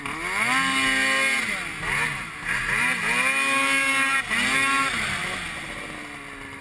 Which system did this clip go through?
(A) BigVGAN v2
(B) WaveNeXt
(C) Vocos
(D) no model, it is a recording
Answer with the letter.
D